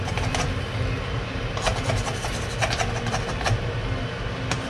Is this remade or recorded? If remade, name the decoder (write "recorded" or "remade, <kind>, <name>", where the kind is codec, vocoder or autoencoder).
remade, vocoder, BigVGAN v2